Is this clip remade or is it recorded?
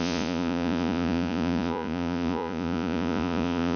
remade